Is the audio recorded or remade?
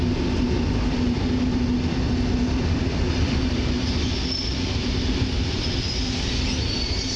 recorded